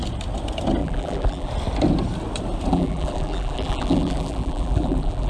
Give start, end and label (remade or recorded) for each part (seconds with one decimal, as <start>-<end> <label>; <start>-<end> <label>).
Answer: 0.0-0.8 recorded; 0.8-1.5 remade; 1.5-2.7 recorded; 2.7-5.3 remade